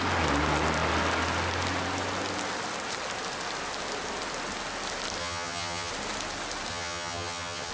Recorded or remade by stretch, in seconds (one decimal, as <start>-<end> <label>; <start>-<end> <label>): 0.0-5.2 recorded; 5.2-5.9 remade; 5.9-6.7 recorded; 6.7-7.7 remade